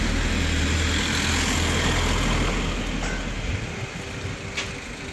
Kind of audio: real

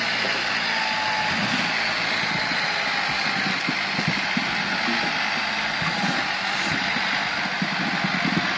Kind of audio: real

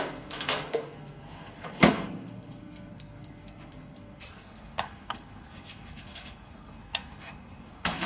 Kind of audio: fake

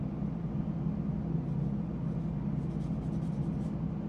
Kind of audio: real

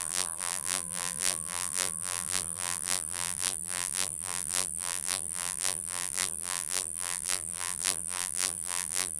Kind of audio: fake